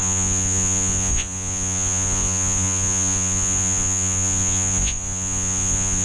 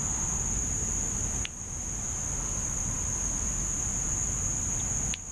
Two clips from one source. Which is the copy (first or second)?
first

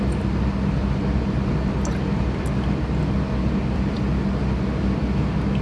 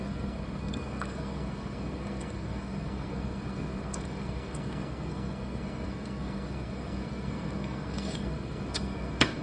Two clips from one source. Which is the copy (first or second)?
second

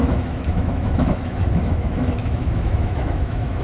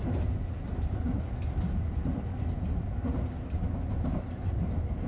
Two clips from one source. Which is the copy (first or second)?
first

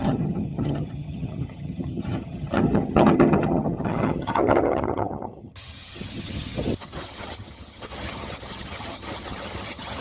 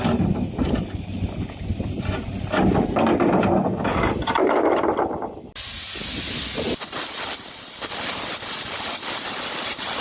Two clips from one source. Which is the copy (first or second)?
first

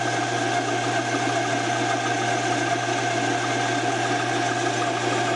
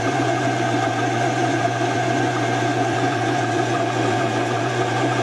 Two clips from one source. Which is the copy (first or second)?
second